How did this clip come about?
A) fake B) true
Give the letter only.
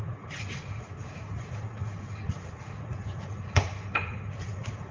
A